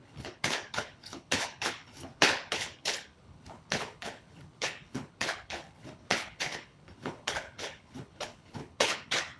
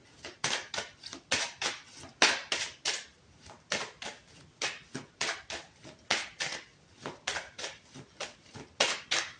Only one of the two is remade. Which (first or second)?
first